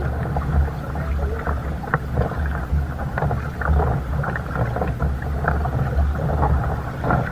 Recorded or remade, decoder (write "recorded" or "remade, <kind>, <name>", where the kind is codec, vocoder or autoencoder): recorded